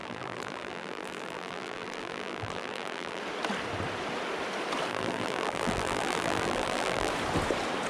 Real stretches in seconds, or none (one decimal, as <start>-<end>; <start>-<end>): 3.2-4.9; 7.1-7.9